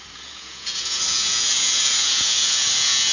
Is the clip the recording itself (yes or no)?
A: no